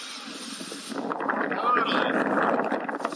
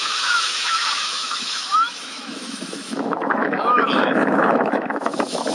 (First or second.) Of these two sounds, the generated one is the second